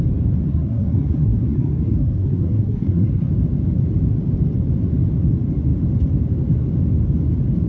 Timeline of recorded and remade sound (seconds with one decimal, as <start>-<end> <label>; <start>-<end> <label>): 0.0-0.5 recorded; 0.5-3.3 remade; 3.3-7.7 recorded